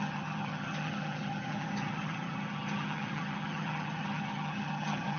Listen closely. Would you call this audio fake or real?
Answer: fake